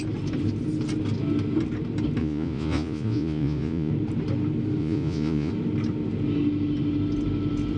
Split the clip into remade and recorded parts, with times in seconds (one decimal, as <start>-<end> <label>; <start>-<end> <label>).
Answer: 0.0-2.2 recorded; 2.2-3.9 remade; 3.9-4.8 recorded; 4.8-5.5 remade; 5.5-7.8 recorded